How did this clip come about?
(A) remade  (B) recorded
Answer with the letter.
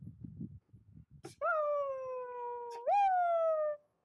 B